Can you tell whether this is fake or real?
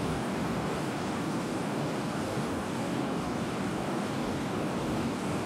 fake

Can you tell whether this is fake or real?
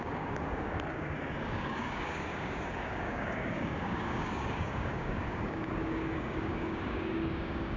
fake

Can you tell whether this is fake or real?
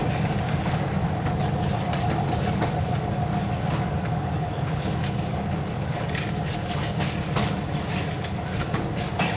fake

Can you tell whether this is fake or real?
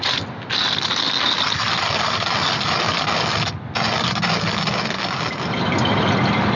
real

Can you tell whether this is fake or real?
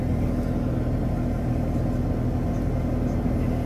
real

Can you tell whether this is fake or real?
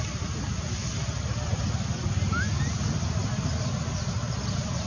real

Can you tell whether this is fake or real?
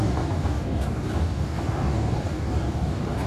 fake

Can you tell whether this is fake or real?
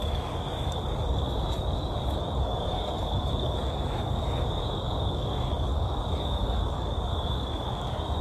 fake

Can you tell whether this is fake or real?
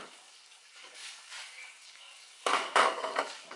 fake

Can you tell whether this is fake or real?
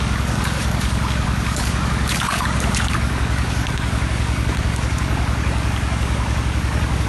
fake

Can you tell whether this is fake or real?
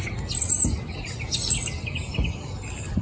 real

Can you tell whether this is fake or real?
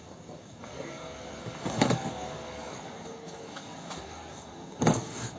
fake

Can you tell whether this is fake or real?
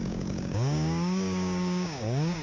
fake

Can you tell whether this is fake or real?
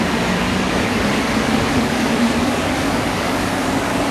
fake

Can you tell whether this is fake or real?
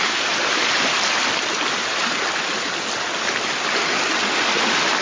real